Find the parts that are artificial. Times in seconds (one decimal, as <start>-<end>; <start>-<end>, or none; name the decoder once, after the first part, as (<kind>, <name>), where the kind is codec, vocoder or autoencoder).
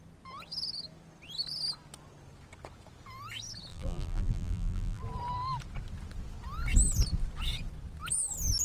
3.7-5.0 (vocoder, BigVGAN v2)